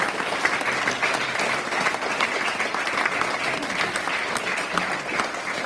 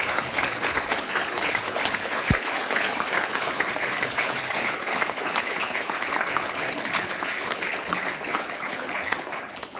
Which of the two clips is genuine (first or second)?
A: first